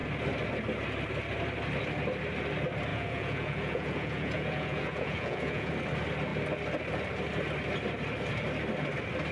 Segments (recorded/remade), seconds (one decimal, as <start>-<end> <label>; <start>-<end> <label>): 0.0-2.9 recorded; 2.9-5.7 remade; 5.7-9.3 recorded